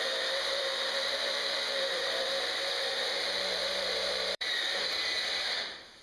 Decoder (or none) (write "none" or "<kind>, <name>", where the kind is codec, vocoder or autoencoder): vocoder, BigVGAN v2